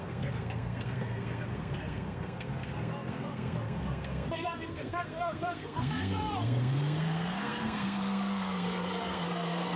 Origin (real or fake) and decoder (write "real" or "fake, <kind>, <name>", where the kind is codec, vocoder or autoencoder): fake, codec, SNAC